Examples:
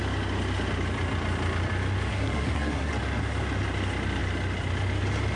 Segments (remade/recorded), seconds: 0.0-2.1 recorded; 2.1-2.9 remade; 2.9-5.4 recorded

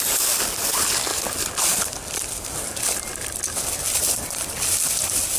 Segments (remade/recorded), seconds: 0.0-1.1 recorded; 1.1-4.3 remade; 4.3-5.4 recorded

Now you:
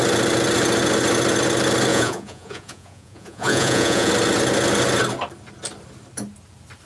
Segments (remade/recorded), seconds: 0.0-1.9 recorded; 1.9-4.1 remade; 4.1-6.9 recorded

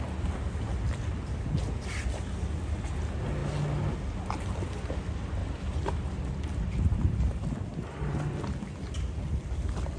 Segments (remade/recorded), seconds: 0.0-5.4 recorded; 5.4-5.9 remade; 5.9-10.0 recorded

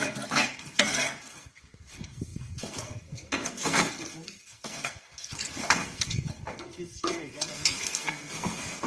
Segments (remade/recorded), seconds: 0.0-8.9 remade

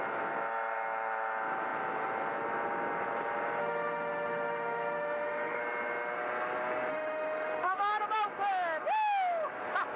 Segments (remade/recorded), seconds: 0.0-3.6 recorded; 3.6-5.6 remade; 5.6-6.9 recorded; 6.9-7.9 remade; 7.9-10.0 recorded

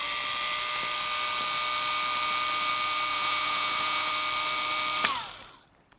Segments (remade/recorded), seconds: 0.0-3.1 recorded; 3.1-4.1 remade; 4.1-6.0 recorded